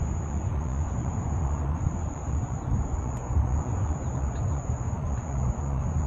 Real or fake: fake